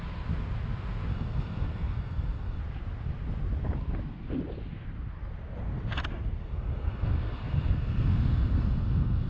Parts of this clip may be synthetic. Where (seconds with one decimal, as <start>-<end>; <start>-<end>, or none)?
1.1-2.6; 6.4-9.3